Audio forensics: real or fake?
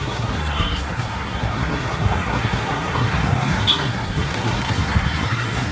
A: fake